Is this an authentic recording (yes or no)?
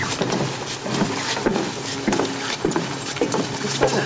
yes